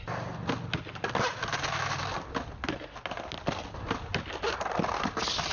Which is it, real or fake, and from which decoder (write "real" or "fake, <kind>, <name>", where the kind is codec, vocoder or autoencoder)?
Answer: real